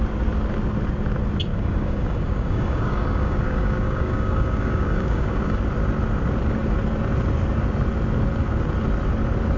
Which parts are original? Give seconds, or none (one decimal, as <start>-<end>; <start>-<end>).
0.0-1.5; 5.6-9.6